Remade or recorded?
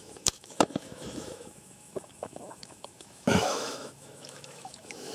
remade